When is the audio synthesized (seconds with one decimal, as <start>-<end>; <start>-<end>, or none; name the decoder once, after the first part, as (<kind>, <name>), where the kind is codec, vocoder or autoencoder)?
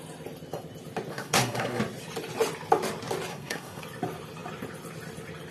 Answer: 1.1-1.8 (codec, SNAC); 3.3-3.8